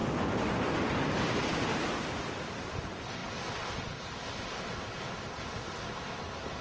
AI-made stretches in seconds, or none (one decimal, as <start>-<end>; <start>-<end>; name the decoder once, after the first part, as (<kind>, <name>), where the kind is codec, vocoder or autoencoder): 0.0-1.5 (vocoder, BigVGAN v2)